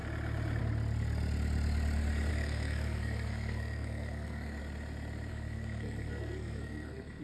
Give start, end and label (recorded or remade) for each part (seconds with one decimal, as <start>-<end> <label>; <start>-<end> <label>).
0.0-2.3 recorded; 2.3-4.6 remade; 4.6-5.3 recorded; 5.3-7.2 remade